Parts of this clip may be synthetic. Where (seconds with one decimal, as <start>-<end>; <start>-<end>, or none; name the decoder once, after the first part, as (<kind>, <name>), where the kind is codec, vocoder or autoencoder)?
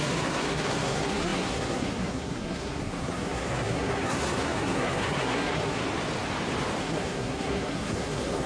0.0-5.8 (codec, SNAC); 6.8-8.5